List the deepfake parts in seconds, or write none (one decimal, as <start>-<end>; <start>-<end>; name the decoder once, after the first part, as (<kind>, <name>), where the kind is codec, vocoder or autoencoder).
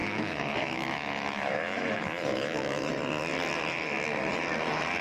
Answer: 0.0-2.9 (autoencoder, DAC-VAE)